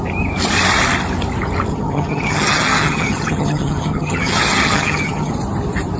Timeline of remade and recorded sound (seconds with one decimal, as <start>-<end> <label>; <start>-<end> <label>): 0.0-1.7 recorded; 1.7-5.3 remade; 5.3-6.0 recorded